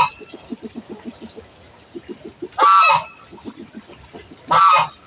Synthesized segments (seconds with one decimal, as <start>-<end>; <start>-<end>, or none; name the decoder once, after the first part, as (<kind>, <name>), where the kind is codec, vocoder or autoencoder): none